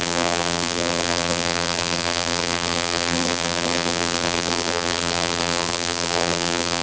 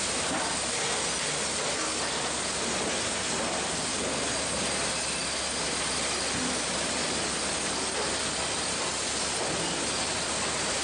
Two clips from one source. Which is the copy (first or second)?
first